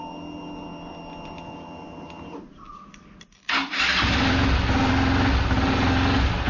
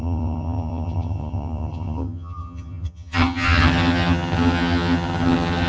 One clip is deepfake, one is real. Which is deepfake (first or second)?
second